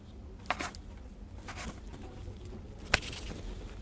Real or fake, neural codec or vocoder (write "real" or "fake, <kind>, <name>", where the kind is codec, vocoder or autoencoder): real